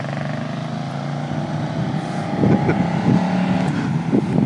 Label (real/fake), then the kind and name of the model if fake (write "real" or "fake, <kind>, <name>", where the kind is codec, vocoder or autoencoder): real